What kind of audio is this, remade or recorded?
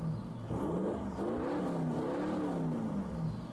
recorded